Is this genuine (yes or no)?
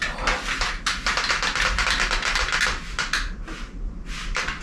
yes